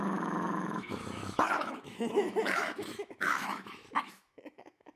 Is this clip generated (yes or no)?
yes